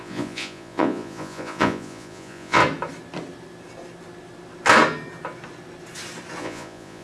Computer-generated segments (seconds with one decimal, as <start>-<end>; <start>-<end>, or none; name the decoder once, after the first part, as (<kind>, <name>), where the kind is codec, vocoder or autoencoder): 0.0-2.6 (vocoder, Vocos); 6.4-7.0